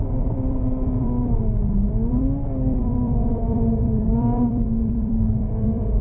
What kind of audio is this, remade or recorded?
remade